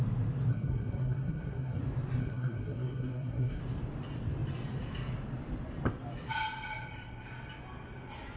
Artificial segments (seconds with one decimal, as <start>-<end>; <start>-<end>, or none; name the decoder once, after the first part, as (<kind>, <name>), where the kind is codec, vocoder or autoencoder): 0.5-1.8 (codec, SNAC); 2.2-3.6